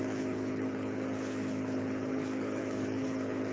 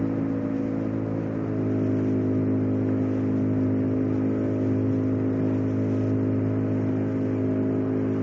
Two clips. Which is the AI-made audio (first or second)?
first